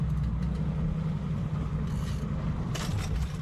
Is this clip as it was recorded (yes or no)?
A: yes